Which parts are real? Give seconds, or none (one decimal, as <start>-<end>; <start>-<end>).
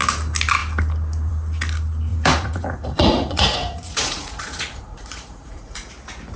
0.0-2.1; 5.9-6.4